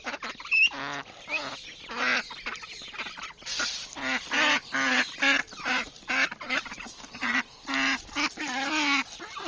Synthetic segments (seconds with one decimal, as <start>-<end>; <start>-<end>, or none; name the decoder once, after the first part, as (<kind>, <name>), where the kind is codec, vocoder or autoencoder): none